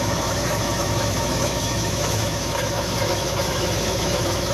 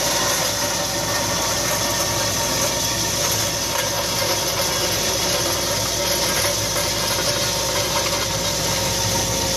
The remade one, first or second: first